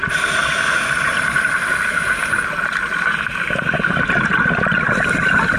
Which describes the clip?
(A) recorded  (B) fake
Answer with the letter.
A